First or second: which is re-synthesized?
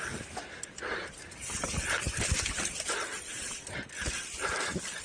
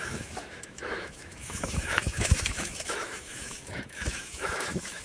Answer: second